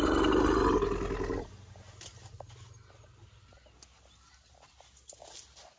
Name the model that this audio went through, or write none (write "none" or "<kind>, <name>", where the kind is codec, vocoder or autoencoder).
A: none